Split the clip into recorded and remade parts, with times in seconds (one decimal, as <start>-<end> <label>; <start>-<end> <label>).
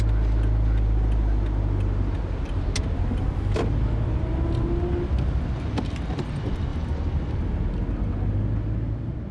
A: 0.0-6.7 recorded; 6.7-7.4 remade; 7.4-9.3 recorded